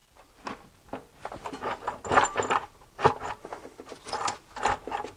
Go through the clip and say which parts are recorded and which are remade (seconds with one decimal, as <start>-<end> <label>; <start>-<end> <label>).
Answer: 0.0-5.2 recorded